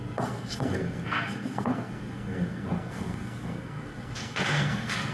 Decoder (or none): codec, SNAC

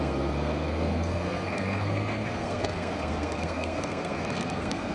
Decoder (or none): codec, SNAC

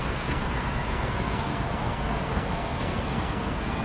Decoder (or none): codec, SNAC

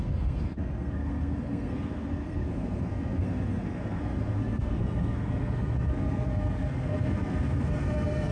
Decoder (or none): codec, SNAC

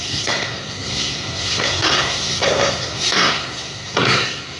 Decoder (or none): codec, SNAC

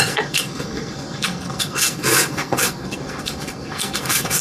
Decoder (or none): codec, SNAC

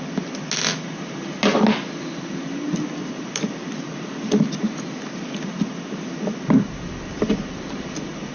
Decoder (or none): none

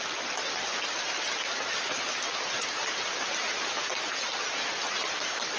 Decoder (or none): none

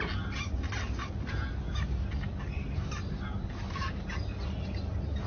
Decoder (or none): none